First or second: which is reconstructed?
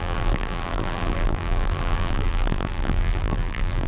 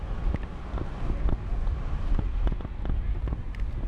first